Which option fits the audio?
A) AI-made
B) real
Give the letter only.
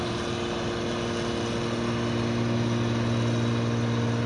B